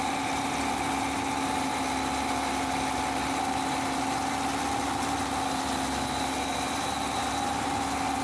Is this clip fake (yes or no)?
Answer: no